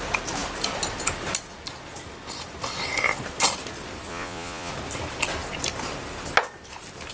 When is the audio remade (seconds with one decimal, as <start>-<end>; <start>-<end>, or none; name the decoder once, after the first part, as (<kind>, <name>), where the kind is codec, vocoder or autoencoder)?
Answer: 4.1-4.7 (vocoder, Vocos)